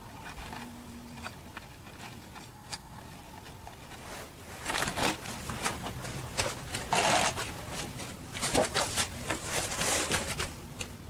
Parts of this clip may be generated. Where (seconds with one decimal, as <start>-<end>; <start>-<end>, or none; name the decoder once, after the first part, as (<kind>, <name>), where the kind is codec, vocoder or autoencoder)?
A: 2.5-3.0 (codec, SNAC)